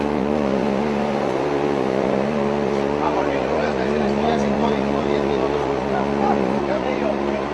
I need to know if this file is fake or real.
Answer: fake